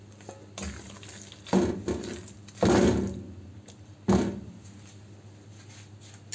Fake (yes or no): no